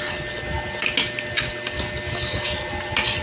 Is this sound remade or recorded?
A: recorded